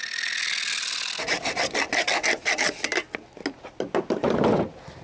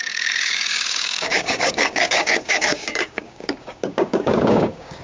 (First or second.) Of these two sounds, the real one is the first